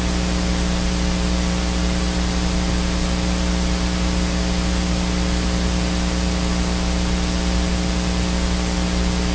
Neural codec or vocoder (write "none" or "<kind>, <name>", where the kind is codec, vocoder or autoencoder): none